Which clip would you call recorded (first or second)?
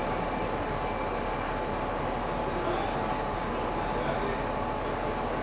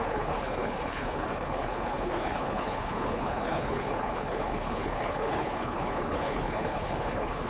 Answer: first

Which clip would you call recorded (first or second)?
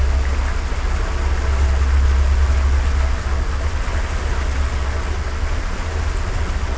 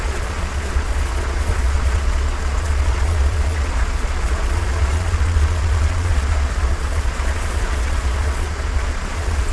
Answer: first